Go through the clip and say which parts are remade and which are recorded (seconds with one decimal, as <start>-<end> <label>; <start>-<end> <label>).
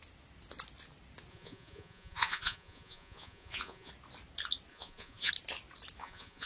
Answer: 0.0-1.3 recorded; 1.3-3.9 remade; 3.9-4.7 recorded; 4.7-5.3 remade; 5.3-6.0 recorded; 6.0-6.5 remade